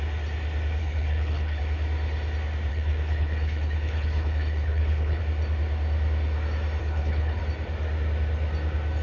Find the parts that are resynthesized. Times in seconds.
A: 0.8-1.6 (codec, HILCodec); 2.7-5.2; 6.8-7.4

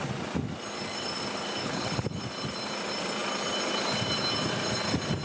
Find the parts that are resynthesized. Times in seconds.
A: 1.6-2.1 (codec, HILCodec)

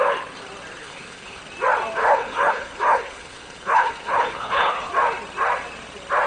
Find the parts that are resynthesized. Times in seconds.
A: 0.8-1.4 (codec, HILCodec); 2.0-4.9

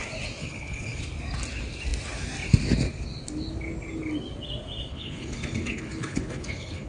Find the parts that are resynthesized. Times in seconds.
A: 0.4-1.0 (codec, HILCodec); 4.9-6.9

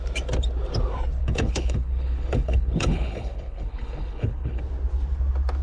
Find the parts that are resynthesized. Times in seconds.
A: 1.2-4.6 (codec, HILCodec)